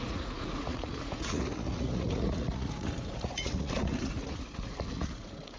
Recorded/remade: remade